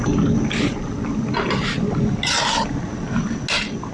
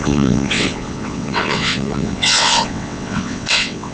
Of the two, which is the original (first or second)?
first